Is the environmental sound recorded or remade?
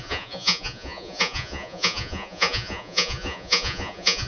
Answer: remade